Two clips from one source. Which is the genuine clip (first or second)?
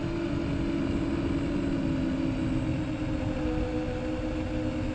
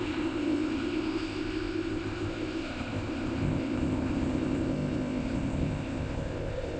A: first